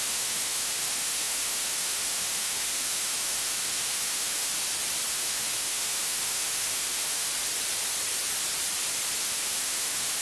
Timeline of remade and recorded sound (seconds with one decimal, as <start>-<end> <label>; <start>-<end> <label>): 0.0-4.5 remade; 4.5-5.1 recorded; 5.1-7.3 remade; 7.3-9.2 recorded; 9.2-10.2 remade